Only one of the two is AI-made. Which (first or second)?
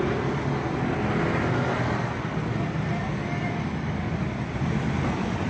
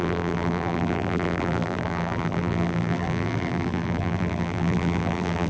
second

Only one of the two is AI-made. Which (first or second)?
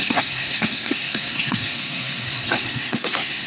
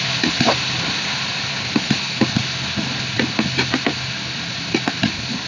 first